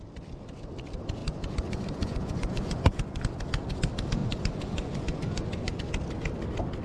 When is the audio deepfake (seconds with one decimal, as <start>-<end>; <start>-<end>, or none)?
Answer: 1.2-3.2; 4.2-5.7